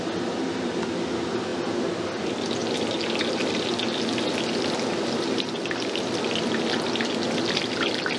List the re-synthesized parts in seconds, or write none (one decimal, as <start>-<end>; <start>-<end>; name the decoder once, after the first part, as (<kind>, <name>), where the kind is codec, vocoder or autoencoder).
none